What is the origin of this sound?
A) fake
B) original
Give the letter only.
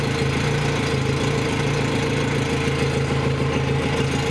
B